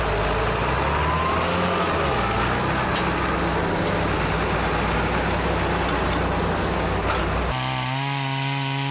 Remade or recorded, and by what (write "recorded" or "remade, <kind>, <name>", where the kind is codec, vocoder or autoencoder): recorded